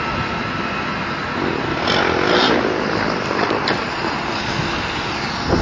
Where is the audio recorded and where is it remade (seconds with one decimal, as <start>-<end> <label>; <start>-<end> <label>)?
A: 0.0-5.6 recorded